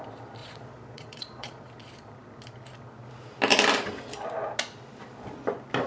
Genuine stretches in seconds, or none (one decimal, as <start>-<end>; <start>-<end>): 0.0-0.4; 1.7-5.9